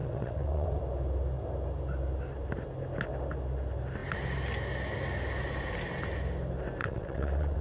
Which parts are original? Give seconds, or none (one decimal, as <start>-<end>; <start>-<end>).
0.8-6.8